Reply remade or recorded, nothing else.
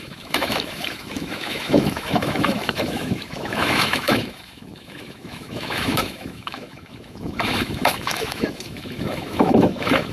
remade